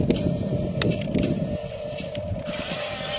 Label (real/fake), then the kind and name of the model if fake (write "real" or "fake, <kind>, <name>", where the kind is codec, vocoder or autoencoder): real